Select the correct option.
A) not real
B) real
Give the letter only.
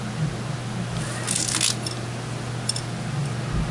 B